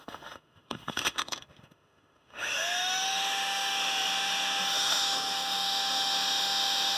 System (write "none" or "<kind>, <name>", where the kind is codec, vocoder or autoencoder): autoencoder, DAC-VAE